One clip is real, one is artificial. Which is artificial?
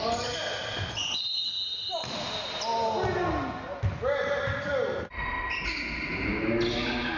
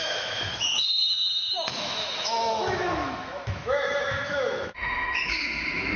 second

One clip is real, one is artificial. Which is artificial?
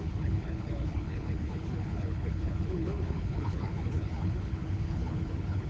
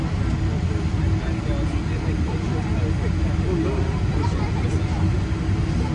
first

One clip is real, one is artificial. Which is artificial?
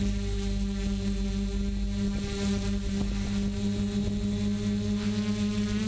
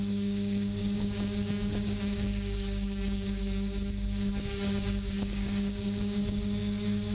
second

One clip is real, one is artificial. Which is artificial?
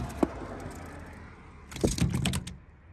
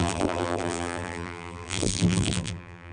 second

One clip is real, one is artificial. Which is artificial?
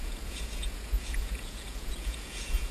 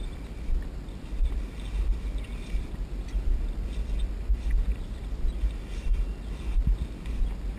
first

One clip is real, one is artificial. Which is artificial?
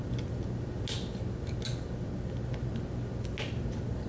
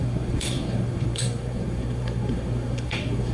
second